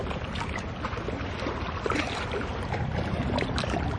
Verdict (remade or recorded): recorded